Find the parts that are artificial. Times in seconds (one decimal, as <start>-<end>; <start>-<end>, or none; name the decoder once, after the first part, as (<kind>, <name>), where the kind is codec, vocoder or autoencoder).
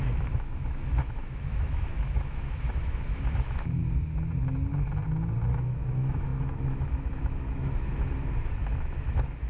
0.0-3.8 (autoencoder, DAC-VAE); 5.5-9.5